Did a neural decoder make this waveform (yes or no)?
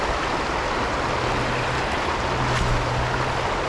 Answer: no